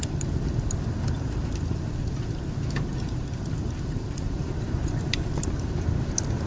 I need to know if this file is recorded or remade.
recorded